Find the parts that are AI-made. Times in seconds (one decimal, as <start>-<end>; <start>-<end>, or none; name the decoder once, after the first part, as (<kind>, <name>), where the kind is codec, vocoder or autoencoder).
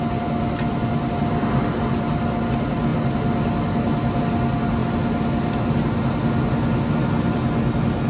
none